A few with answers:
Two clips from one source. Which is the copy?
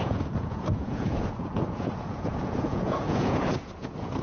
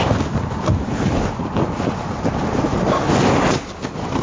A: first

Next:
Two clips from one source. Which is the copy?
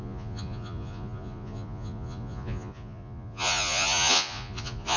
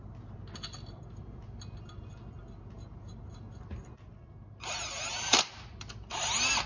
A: first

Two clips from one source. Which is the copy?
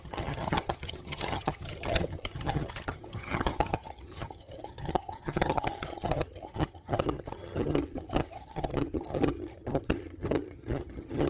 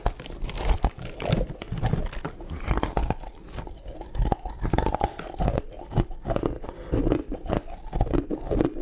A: first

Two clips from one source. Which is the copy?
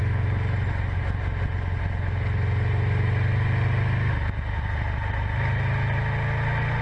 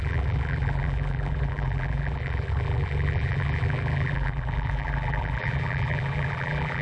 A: second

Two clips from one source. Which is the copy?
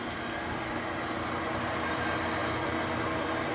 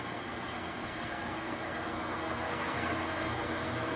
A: second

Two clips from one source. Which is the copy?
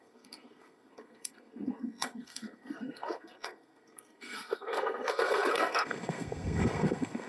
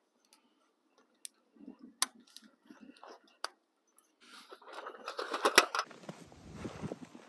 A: first